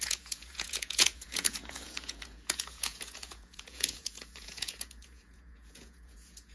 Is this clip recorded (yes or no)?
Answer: no